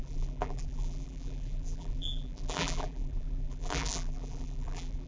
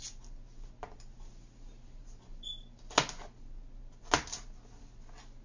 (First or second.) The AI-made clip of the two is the first